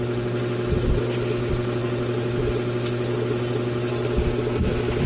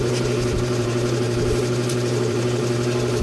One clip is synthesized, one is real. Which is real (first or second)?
first